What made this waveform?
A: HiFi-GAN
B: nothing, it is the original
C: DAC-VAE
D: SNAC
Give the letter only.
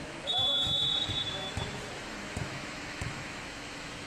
C